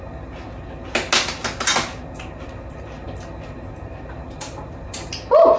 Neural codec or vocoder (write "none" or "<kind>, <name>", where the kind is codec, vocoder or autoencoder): none